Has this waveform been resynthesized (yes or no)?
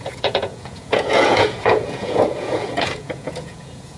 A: yes